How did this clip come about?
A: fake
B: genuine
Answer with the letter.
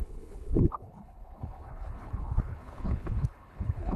A